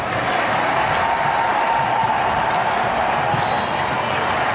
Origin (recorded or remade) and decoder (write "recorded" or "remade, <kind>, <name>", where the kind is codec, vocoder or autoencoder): recorded